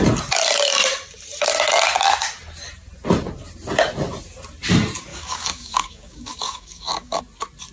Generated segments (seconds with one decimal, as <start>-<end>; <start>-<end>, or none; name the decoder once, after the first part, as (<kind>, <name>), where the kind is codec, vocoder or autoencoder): 5.1-7.2 (codec, DAC)